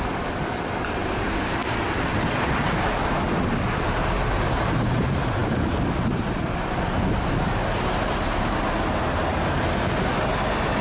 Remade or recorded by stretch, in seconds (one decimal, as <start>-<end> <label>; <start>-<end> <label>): 0.0-10.8 recorded